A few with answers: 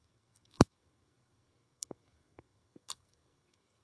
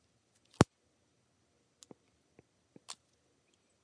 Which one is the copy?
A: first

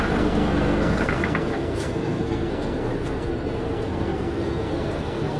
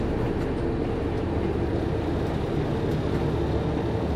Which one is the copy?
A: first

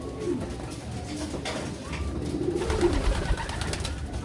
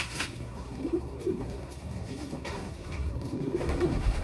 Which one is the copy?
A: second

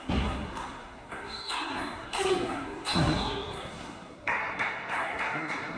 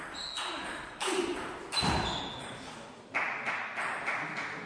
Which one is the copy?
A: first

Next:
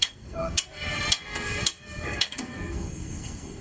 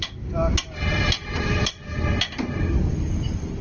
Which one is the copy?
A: first